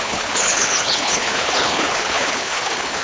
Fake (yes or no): yes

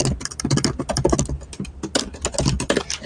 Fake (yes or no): no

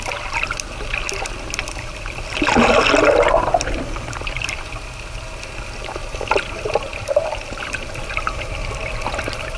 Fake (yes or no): no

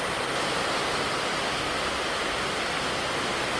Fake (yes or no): no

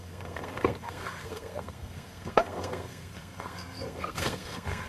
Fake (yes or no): yes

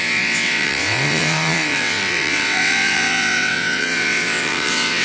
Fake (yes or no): yes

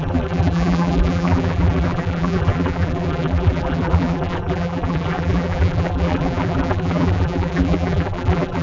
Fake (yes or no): yes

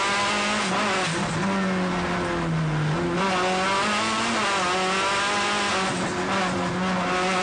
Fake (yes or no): no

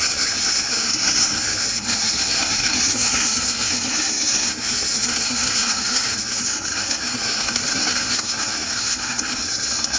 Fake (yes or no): yes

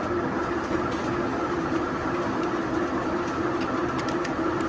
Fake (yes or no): no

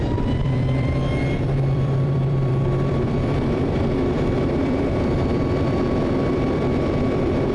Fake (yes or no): yes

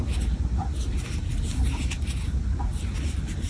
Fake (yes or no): no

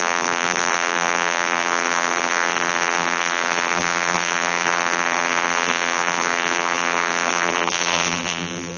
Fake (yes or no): yes